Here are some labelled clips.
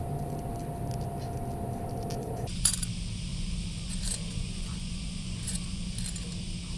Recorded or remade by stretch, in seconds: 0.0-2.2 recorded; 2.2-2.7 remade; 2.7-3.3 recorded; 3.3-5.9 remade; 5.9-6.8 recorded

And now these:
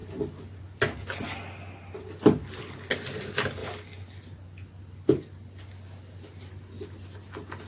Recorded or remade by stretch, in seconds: 0.0-7.7 recorded

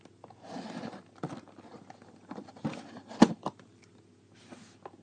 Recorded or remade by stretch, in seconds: 0.0-1.7 recorded; 1.7-3.8 remade; 3.8-5.0 recorded

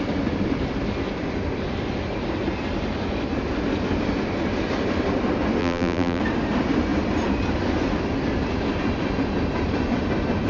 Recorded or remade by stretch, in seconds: 0.0-5.6 recorded; 5.6-6.2 remade; 6.2-10.5 recorded

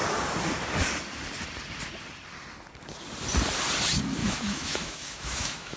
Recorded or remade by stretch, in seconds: 0.0-4.2 recorded; 4.2-5.8 remade

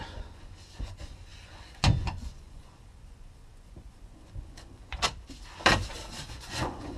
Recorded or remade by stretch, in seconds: 0.0-5.1 remade; 5.1-6.3 recorded; 6.3-7.0 remade